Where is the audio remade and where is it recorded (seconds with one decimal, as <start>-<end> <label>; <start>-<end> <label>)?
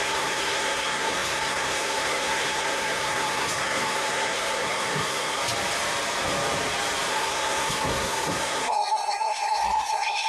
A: 0.0-5.4 remade; 5.4-7.1 recorded; 7.1-10.3 remade